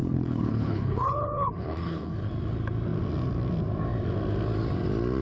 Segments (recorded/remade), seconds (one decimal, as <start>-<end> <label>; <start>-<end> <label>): 0.0-2.3 remade; 2.3-5.2 recorded